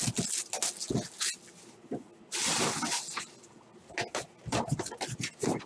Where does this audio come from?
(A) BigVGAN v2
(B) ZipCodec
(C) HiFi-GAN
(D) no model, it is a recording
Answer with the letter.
D